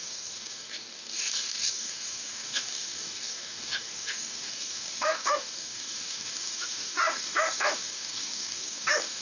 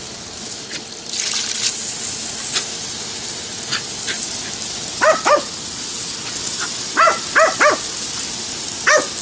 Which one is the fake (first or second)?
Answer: first